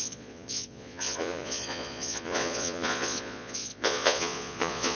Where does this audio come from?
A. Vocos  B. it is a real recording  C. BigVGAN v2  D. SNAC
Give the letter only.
A